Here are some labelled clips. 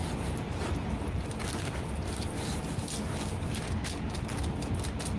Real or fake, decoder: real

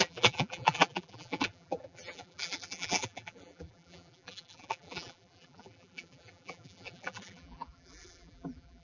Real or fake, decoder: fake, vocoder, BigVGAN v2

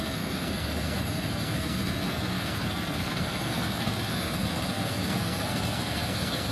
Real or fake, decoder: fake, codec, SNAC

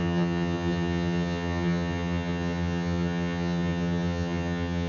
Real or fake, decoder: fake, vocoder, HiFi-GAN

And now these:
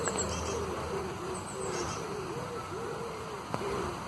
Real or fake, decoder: real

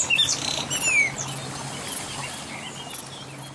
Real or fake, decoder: real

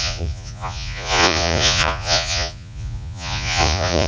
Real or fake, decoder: fake, vocoder, Vocos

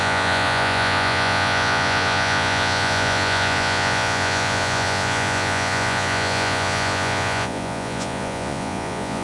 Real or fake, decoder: fake, vocoder, Vocos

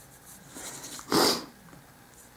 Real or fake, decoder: real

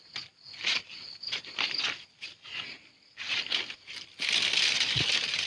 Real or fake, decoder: real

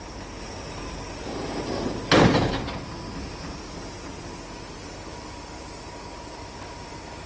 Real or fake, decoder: real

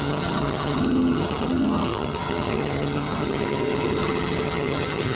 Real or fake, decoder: fake, vocoder, HiFi-GAN